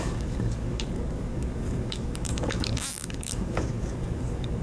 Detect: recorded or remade remade